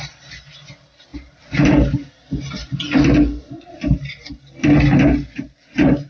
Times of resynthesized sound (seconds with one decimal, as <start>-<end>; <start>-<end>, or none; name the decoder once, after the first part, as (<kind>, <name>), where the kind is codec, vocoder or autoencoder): none